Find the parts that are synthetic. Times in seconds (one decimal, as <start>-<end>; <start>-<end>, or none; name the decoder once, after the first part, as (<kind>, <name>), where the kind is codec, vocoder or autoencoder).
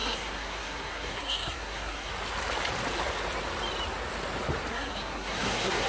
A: 0.0-2.1 (codec, SNAC); 4.7-5.9